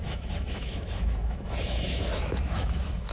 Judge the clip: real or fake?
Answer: fake